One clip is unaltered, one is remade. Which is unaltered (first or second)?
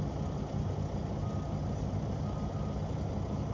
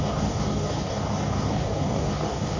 first